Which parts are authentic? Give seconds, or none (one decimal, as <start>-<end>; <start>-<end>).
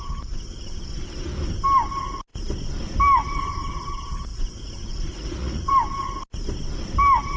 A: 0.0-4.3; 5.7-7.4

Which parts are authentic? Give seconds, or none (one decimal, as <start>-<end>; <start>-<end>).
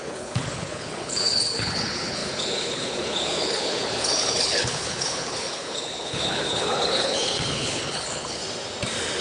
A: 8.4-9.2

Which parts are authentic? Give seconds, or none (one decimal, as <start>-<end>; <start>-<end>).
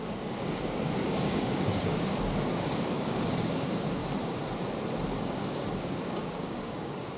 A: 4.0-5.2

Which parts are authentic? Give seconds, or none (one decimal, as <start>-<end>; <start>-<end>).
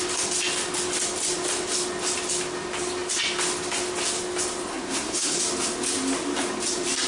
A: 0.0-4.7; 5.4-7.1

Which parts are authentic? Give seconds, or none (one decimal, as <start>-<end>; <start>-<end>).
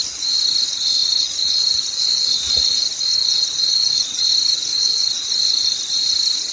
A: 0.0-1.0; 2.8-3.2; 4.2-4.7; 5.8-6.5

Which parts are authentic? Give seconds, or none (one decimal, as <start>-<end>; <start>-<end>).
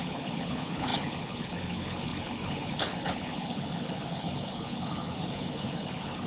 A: none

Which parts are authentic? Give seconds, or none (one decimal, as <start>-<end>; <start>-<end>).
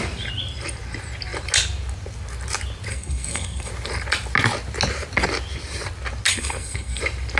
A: 0.0-2.9; 3.7-6.3; 7.0-7.4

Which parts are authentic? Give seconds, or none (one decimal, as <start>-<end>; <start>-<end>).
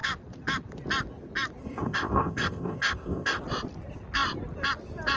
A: 0.0-1.6; 3.4-5.2